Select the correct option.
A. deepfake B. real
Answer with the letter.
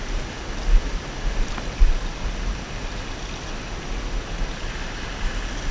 B